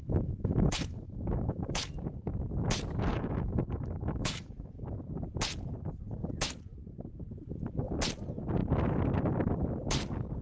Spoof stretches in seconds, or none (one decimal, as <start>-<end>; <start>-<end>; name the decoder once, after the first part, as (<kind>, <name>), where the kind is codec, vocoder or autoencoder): 0.0-1.9 (autoencoder, DAC-VAE); 3.1-4.8